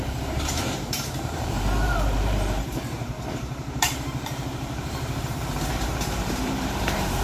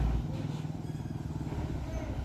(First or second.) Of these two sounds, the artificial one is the first